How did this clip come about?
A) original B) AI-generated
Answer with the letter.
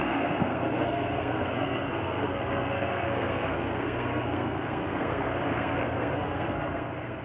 B